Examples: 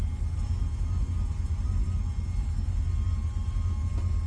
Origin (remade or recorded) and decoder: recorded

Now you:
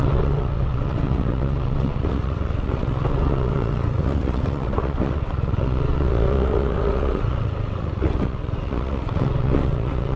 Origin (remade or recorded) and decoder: remade, vocoder, WaveNeXt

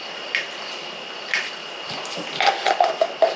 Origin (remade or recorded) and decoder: recorded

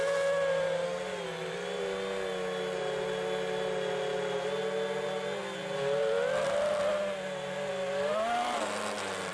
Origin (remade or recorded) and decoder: recorded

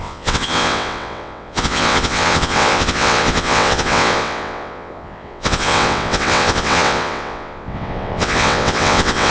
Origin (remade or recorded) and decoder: remade, vocoder, WaveNeXt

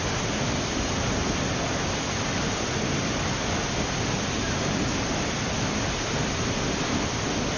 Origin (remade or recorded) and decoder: recorded